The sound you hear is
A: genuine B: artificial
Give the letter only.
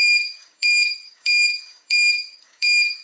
B